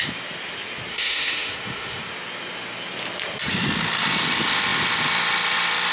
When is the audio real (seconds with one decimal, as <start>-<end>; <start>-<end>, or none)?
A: 0.0-0.9; 2.0-5.9